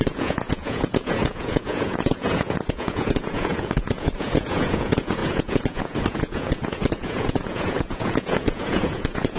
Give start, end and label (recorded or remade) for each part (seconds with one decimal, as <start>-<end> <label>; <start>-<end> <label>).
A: 0.0-9.4 remade